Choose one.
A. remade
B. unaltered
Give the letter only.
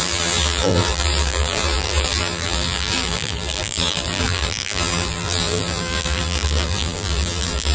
A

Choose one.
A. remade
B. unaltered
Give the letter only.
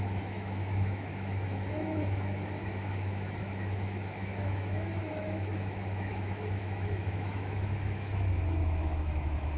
A